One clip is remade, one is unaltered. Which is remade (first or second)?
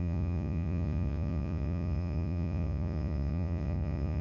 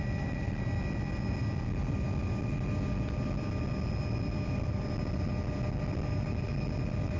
first